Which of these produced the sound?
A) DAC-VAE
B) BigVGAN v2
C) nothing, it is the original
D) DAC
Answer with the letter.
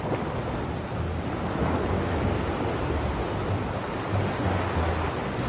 C